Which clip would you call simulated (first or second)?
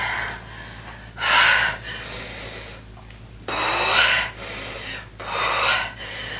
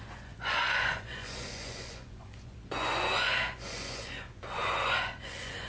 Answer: second